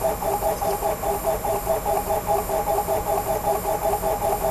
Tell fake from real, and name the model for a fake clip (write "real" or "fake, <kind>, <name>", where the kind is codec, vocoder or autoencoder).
real